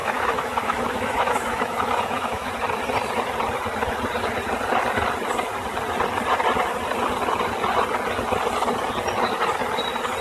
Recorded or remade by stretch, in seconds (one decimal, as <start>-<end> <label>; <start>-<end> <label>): 0.0-2.5 remade; 2.5-10.2 recorded